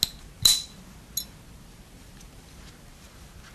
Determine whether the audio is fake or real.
real